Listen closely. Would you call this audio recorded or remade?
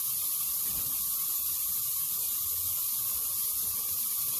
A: remade